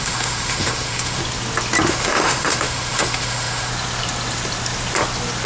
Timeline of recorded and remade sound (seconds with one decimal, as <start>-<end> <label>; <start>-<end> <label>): 0.0-1.2 remade; 1.2-1.9 recorded; 1.9-3.7 remade; 3.7-5.5 recorded